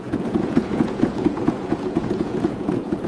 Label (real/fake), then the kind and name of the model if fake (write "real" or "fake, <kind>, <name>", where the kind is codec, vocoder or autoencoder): fake, vocoder, Vocos